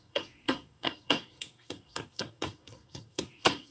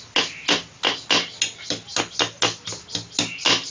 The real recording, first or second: second